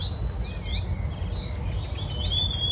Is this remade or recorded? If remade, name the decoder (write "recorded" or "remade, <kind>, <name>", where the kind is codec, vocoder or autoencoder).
recorded